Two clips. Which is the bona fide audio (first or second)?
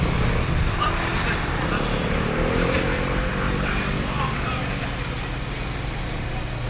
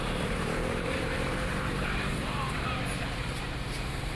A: first